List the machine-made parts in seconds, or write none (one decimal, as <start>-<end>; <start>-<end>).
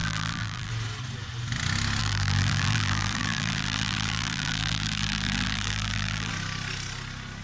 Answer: 0.0-0.7; 2.0-6.3